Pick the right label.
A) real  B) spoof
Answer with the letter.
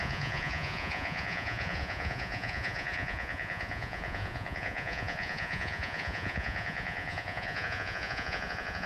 B